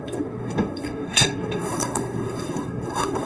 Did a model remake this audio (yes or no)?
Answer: yes